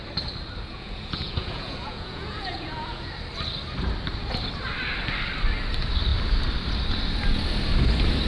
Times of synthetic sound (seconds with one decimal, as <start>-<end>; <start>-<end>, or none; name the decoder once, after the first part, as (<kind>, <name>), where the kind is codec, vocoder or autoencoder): 0.7-3.1 (vocoder, Vocos)